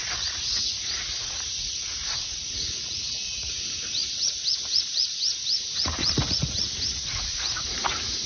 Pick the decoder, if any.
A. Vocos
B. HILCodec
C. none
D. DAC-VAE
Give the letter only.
A